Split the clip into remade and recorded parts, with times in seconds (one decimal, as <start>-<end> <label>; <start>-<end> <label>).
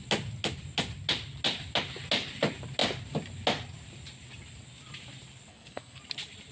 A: 0.0-5.5 recorded; 5.5-6.0 remade; 6.0-6.5 recorded